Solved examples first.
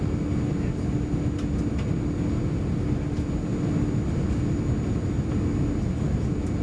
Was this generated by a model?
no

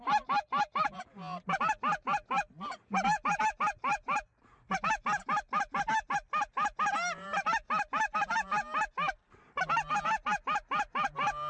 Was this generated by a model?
no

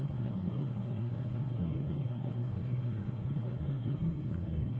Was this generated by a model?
yes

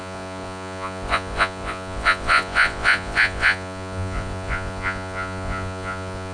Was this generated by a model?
yes